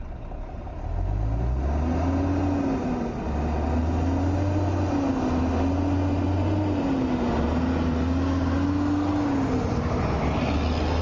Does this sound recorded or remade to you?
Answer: recorded